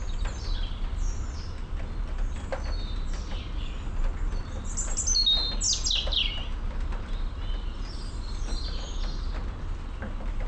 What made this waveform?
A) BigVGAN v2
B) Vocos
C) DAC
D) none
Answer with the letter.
D